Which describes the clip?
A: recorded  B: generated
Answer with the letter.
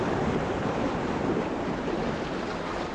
A